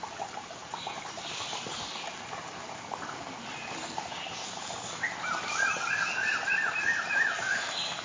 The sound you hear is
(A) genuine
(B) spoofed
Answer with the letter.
B